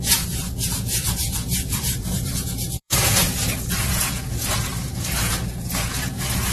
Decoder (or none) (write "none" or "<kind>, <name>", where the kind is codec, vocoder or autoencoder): vocoder, Vocos